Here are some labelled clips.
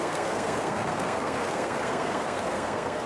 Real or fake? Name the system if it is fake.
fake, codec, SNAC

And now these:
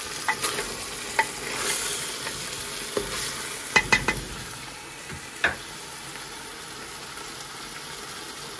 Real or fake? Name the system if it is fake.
real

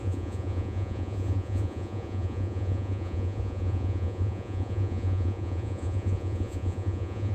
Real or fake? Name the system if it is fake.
fake, vocoder, Vocos